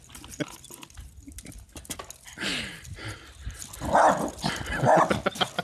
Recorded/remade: recorded